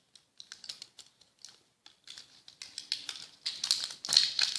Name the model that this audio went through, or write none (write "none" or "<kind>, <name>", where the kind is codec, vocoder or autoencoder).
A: none